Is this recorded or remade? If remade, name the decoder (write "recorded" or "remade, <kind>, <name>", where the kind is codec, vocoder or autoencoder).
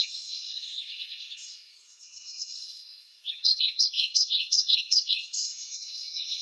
remade, codec, SNAC